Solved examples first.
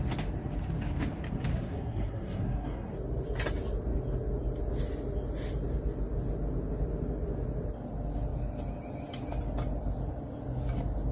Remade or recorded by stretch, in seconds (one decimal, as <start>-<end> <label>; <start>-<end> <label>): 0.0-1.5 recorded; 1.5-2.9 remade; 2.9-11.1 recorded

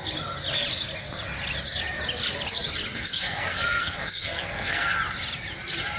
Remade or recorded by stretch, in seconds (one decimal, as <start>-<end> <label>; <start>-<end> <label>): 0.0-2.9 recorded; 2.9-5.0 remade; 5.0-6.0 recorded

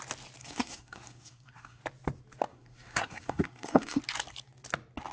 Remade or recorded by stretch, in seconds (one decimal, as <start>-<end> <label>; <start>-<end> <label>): 0.0-0.4 recorded; 0.4-1.8 remade; 1.8-2.5 recorded; 2.5-4.0 remade; 4.0-5.1 recorded